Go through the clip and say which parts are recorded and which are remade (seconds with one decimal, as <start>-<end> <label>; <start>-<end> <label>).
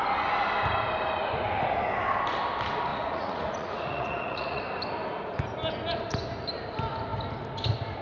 0.0-2.9 recorded; 2.9-4.6 remade; 4.6-8.0 recorded